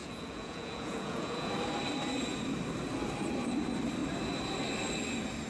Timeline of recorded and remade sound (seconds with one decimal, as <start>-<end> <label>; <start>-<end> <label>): 0.0-1.5 remade; 1.5-5.5 recorded